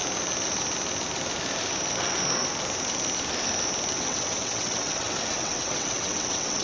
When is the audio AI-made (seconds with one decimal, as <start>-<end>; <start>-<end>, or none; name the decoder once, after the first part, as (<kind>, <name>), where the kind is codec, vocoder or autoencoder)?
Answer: 3.9-6.6 (vocoder, WaveNeXt)